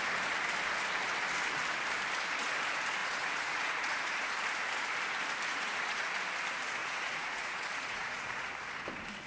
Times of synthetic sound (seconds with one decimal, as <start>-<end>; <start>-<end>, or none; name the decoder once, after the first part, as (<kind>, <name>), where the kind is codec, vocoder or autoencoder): 3.0-4.3 (vocoder, Vocos); 5.5-6.1; 6.8-8.5